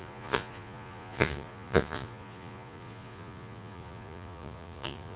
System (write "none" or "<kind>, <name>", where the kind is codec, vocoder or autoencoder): vocoder, Vocos